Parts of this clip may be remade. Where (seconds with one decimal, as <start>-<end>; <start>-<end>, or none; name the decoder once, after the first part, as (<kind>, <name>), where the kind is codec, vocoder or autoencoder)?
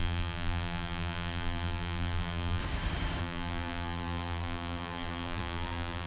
0.0-2.6 (vocoder, BigVGAN v2); 3.2-6.1